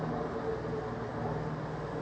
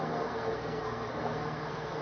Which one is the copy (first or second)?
second